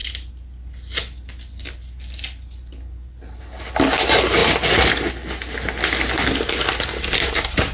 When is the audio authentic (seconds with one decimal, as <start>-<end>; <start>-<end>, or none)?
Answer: 0.0-7.7